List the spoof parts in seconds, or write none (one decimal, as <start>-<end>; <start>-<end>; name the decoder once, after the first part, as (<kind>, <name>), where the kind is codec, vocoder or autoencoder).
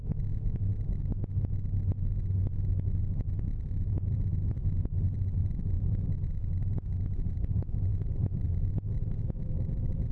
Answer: 0.0-0.7 (vocoder, BigVGAN v2); 3.0-10.1